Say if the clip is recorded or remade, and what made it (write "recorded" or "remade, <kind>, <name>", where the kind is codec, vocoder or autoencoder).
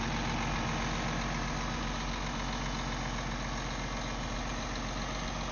recorded